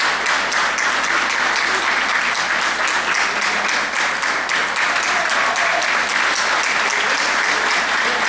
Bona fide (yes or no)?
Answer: yes